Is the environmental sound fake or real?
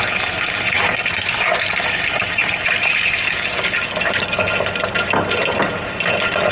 real